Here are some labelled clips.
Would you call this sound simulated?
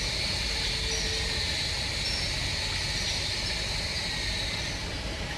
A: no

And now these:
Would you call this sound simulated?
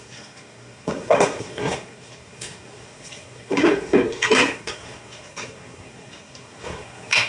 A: yes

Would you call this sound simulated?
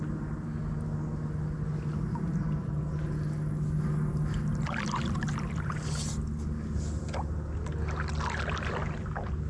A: no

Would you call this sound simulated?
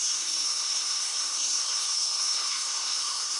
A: yes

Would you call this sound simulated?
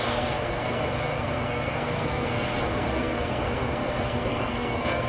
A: yes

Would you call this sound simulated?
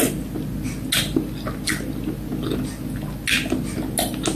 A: no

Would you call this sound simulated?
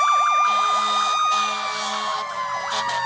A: no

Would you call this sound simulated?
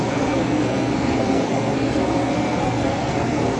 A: yes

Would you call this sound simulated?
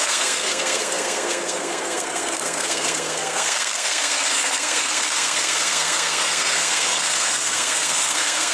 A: yes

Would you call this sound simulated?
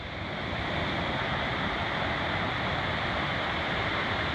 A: no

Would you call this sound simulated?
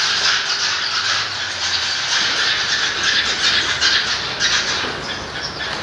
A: no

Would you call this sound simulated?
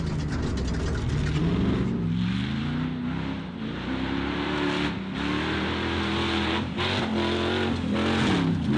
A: no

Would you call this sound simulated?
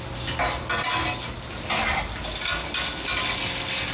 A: no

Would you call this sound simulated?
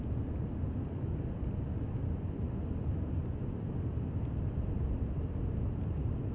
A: no